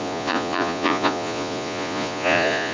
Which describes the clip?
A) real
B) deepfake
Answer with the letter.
B